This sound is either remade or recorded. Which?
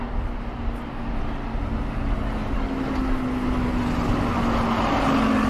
recorded